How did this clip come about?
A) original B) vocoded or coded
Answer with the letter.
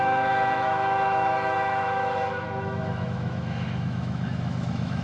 B